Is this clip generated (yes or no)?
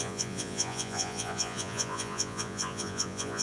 yes